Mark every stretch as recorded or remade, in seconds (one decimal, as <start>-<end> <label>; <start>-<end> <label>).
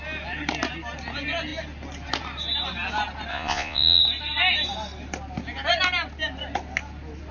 0.0-3.3 recorded; 3.3-4.0 remade; 4.0-7.3 recorded